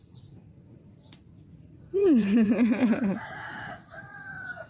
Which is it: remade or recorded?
remade